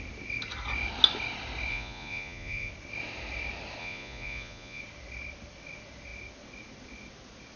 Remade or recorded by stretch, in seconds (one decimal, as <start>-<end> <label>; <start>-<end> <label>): 0.0-1.7 recorded; 1.7-2.7 remade; 2.7-3.8 recorded; 3.8-4.8 remade; 4.8-7.6 recorded